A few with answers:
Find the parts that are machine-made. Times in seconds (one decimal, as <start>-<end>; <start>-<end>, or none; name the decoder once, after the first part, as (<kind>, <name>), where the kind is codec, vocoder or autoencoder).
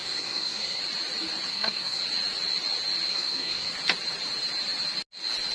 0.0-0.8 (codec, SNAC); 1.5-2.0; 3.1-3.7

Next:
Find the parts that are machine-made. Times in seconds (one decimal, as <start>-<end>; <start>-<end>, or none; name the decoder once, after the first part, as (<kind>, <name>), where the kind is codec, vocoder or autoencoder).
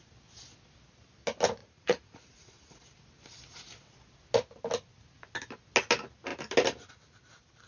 1.6-2.8 (vocoder, Vocos)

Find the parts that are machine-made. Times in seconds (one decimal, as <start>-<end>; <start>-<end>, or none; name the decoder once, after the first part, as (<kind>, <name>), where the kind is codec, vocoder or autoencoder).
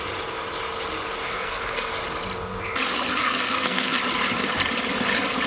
1.3-1.9 (codec, SNAC); 3.2-4.0